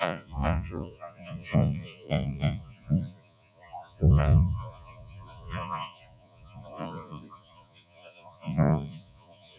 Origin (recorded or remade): remade